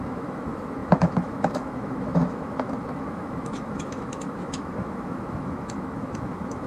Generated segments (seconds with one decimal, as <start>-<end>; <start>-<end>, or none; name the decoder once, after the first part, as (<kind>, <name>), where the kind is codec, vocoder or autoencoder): 0.0-6.7 (autoencoder, DAC-VAE)